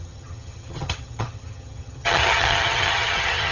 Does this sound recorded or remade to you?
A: remade